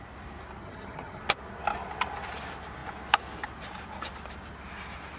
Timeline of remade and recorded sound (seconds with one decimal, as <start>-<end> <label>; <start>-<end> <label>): 0.0-0.6 recorded; 0.6-1.2 remade; 1.2-5.2 recorded